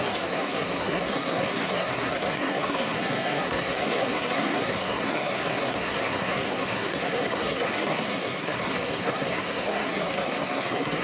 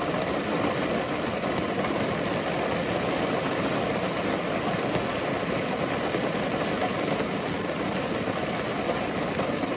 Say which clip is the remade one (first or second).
first